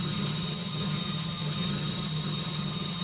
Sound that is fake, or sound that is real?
fake